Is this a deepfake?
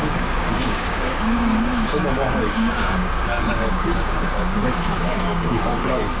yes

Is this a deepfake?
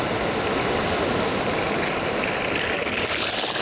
no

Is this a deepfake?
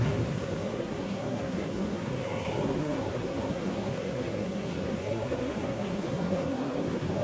yes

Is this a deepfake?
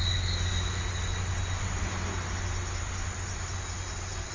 no